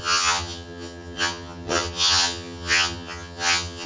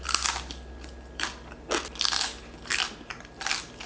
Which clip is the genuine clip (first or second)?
second